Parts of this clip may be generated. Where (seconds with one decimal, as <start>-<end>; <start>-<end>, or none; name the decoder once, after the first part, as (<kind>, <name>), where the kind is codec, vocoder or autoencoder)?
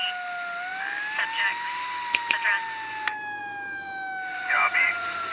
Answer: 4.3-5.3 (vocoder, Vocos)